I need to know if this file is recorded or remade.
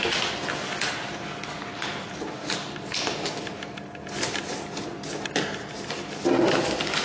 recorded